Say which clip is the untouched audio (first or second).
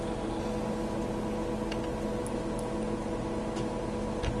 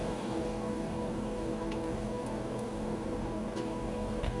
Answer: first